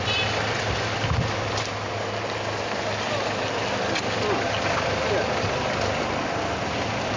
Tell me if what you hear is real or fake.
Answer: real